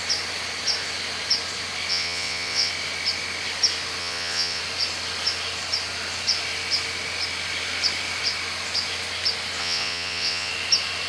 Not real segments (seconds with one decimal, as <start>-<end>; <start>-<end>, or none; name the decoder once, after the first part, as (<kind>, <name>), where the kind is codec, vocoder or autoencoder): 1.9-2.7 (vocoder, WaveNeXt); 4.0-4.6; 9.6-10.5